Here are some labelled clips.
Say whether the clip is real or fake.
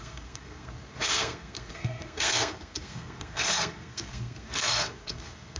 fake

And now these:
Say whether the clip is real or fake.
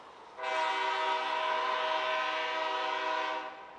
real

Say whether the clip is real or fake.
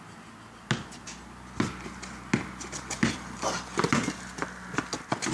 real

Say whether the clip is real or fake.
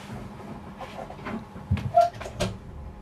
real